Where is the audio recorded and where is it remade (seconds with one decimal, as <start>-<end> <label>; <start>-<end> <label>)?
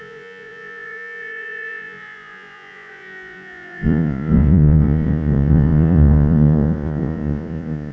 0.0-7.9 remade